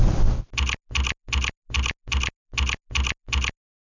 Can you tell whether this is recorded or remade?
recorded